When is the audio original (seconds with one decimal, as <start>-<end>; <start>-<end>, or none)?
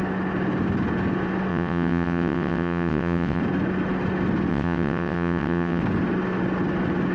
0.0-1.5; 3.4-4.5; 5.8-7.1